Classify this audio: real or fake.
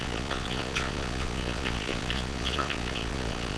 fake